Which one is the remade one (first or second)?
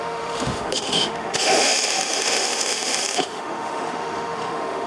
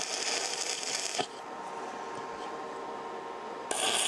first